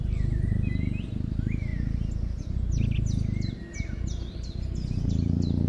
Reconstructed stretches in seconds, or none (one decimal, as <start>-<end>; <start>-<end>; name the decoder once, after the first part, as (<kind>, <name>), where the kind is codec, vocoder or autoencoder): 0.0-1.7 (vocoder, BigVGAN v2); 5.1-5.7